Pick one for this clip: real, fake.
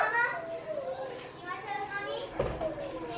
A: real